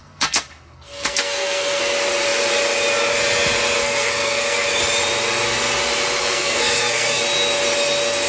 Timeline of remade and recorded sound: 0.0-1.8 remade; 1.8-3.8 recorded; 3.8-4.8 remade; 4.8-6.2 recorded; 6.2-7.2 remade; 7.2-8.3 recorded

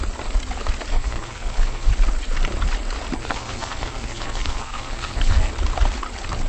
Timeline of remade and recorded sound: 0.0-0.9 recorded; 0.9-1.9 remade; 1.9-3.2 recorded; 3.2-5.5 remade; 5.5-6.5 recorded

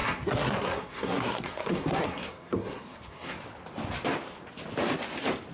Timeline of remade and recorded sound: 0.0-3.3 remade; 3.3-5.5 recorded

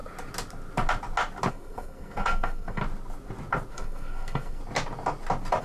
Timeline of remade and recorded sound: 0.0-1.5 recorded; 1.5-2.8 remade; 2.8-3.7 recorded; 3.7-4.6 remade; 4.6-5.6 recorded

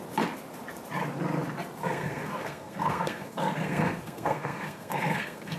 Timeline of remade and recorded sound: 0.0-1.8 recorded; 1.8-5.6 remade

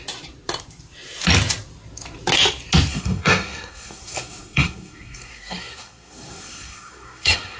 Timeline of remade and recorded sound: 0.0-2.9 recorded; 2.9-7.6 remade

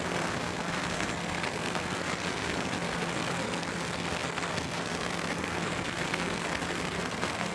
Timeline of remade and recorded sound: 0.0-7.5 remade

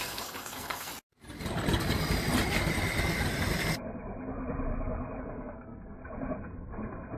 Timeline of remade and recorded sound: 0.0-0.9 remade; 0.9-5.2 recorded; 5.2-6.0 remade; 6.0-7.2 recorded